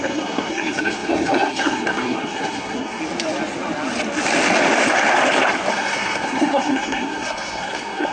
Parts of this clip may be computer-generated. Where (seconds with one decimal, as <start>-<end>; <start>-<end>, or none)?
0.0-3.0; 5.7-8.1